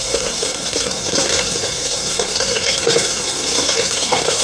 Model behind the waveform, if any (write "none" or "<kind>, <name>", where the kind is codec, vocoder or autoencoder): codec, SNAC